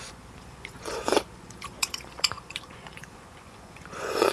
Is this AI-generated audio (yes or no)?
yes